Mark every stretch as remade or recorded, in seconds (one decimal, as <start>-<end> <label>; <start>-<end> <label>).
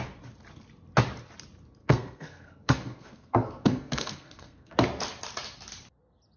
0.0-1.8 recorded; 1.8-4.7 remade; 4.7-6.4 recorded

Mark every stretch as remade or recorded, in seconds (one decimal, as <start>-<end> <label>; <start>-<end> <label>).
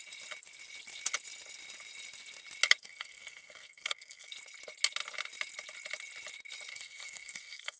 0.0-2.8 recorded; 2.8-4.3 remade; 4.3-6.7 recorded; 6.7-7.8 remade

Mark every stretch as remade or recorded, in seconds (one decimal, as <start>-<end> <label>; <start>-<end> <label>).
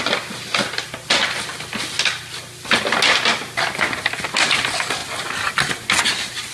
0.0-6.5 recorded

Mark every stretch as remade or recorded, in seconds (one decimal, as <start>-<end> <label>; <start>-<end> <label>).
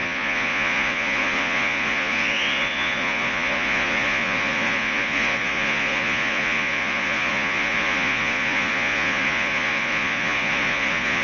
0.0-11.2 remade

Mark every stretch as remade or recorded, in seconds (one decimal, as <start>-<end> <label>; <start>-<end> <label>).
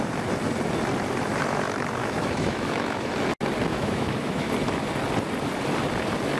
0.0-2.0 recorded; 2.0-3.1 remade; 3.1-3.7 recorded; 3.7-4.5 remade; 4.5-6.4 recorded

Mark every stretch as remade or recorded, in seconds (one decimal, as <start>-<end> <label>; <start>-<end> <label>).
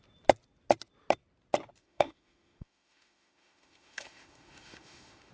0.0-1.8 recorded; 1.8-5.3 remade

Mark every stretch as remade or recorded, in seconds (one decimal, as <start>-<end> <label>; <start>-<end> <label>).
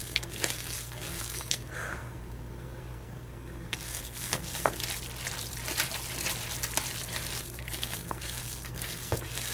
0.0-4.8 remade; 4.8-7.4 recorded; 7.4-9.5 remade